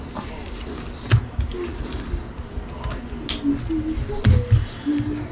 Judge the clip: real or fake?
real